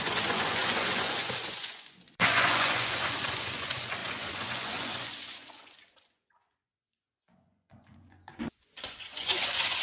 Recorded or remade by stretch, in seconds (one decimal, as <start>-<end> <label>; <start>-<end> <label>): 0.0-9.8 remade